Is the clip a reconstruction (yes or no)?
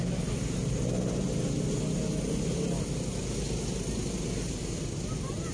no